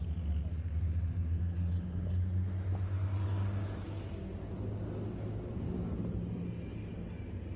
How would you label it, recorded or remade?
recorded